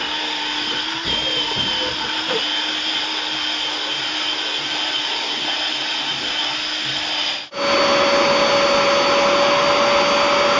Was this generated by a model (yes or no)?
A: no